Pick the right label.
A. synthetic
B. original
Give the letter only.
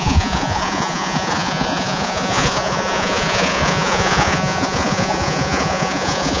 A